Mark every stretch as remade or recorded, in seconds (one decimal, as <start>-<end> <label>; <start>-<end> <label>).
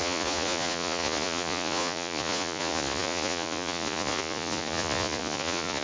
0.0-5.8 remade